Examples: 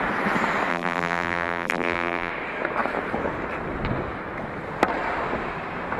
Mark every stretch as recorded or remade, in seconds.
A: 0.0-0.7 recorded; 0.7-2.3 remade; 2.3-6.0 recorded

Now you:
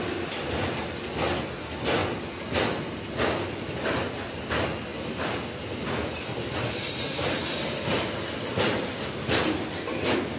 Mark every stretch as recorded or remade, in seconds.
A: 0.0-10.4 recorded

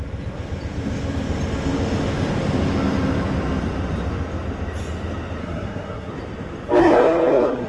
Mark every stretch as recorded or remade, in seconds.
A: 0.0-5.4 recorded; 5.4-6.1 remade; 6.1-6.8 recorded; 6.8-7.7 remade

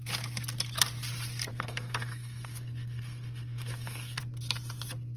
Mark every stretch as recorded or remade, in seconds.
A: 0.0-1.5 recorded; 1.5-4.2 remade; 4.2-5.2 recorded

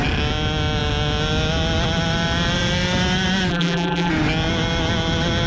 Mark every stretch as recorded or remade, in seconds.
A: 0.0-3.5 recorded; 3.5-4.1 remade; 4.1-5.5 recorded

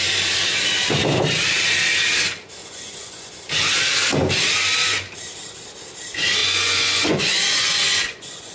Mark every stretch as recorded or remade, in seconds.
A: 0.0-2.6 recorded; 2.6-3.3 remade; 3.3-6.4 recorded; 6.4-8.5 remade

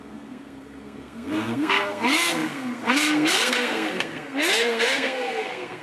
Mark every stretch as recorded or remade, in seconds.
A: 0.0-5.8 remade